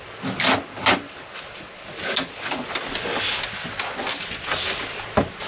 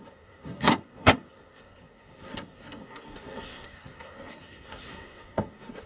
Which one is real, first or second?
first